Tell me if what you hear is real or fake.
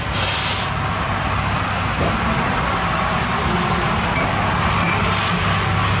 real